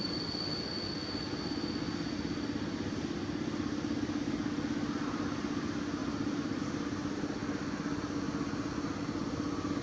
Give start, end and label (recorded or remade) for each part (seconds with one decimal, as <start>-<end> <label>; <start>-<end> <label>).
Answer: 0.0-6.0 recorded; 6.0-6.6 remade; 6.6-9.8 recorded

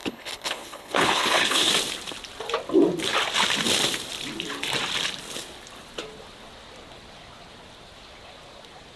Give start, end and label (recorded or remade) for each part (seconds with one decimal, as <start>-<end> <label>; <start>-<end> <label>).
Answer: 0.0-1.7 remade; 1.7-9.0 recorded